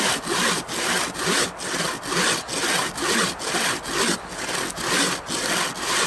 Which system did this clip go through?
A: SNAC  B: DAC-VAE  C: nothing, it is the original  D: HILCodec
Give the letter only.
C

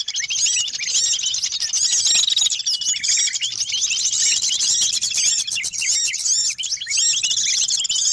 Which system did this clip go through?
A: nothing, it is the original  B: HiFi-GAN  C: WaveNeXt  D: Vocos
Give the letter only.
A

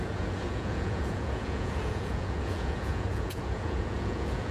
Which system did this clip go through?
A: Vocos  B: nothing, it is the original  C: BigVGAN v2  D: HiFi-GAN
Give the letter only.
A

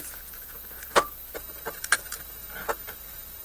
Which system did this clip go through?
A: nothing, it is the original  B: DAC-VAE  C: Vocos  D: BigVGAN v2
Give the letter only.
C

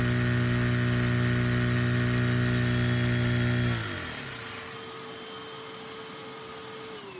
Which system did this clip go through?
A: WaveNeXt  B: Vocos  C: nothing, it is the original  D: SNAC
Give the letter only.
C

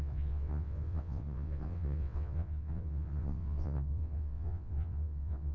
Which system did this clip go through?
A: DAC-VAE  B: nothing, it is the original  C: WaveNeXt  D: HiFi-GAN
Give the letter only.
C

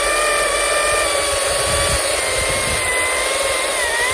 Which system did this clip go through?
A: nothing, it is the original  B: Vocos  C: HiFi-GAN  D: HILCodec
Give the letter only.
A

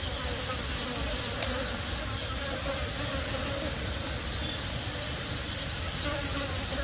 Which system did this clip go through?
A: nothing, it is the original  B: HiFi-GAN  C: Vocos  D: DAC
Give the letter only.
A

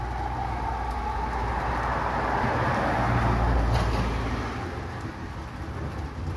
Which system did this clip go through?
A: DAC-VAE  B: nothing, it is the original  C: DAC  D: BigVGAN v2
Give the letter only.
B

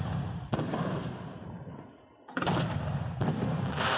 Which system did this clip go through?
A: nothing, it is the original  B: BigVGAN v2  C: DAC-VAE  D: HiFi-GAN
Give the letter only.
A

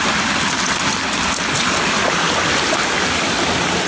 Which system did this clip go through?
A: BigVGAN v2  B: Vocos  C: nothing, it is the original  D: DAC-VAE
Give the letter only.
C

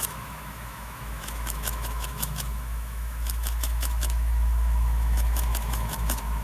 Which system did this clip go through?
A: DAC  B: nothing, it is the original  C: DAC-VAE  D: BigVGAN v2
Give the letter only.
C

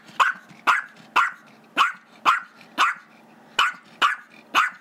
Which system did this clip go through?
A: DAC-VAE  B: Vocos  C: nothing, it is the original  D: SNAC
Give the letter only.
C